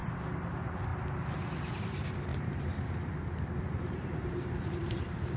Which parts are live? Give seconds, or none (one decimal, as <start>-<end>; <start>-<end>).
0.5-2.3